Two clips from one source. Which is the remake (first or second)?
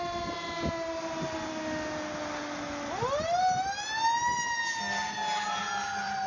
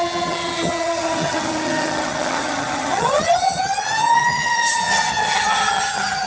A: second